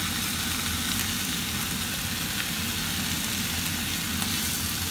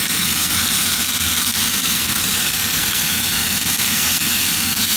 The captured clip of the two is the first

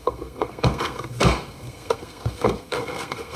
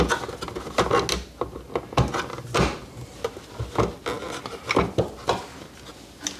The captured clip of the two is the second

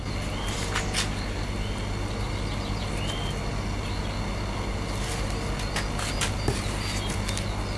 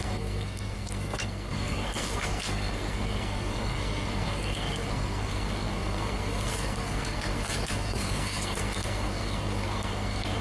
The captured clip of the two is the first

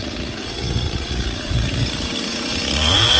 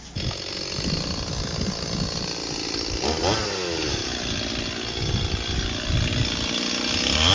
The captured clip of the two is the second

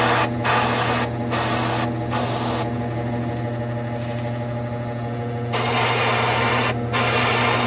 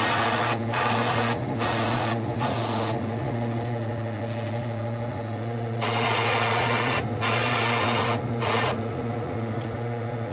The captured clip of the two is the first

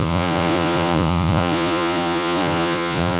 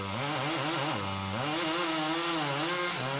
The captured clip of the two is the second